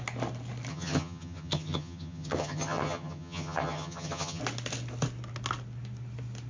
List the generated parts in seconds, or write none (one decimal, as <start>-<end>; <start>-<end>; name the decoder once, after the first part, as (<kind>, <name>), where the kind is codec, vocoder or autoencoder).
0.7-4.4 (vocoder, HiFi-GAN)